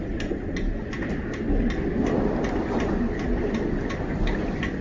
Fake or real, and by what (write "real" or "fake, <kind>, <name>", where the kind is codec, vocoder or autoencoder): real